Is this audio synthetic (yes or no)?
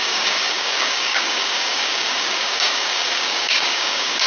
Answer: yes